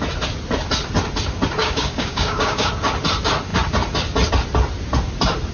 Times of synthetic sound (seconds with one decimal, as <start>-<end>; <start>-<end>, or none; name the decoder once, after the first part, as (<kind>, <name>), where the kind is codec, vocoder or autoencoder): 1.6-2.7 (codec, DAC)